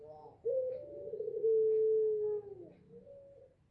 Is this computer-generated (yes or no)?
no